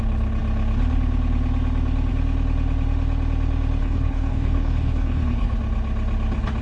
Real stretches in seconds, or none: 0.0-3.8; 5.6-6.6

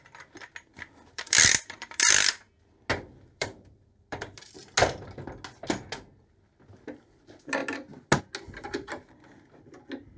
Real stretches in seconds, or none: 0.0-0.7; 2.0-2.9; 4.6-10.2

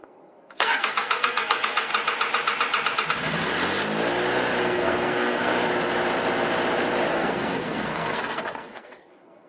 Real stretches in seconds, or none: 1.9-4.6; 5.5-7.1

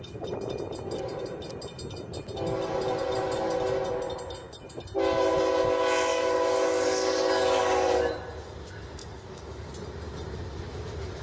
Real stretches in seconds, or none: 0.0-6.1; 8.1-9.0; 9.7-11.2

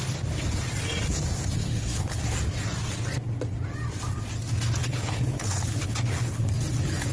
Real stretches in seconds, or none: 0.0-1.6; 2.2-4.8; 6.5-7.1

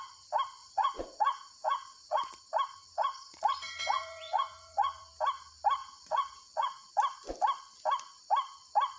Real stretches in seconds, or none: 0.0-0.6; 2.4-2.9; 5.1-5.8; 6.9-9.0

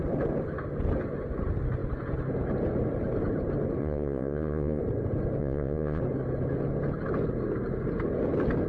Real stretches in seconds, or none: 0.0-3.8; 4.8-5.4; 6.0-8.7

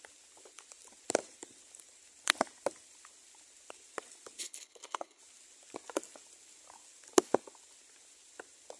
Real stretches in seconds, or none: 0.0-4.4; 5.2-8.8